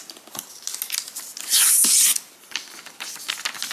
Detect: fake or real real